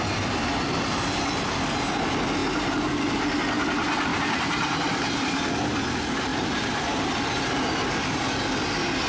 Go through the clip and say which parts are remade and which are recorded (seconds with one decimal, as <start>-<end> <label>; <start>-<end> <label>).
0.0-2.4 recorded; 2.4-3.2 remade; 3.2-4.1 recorded; 4.1-5.4 remade; 5.4-6.3 recorded; 6.3-7.1 remade; 7.1-9.1 recorded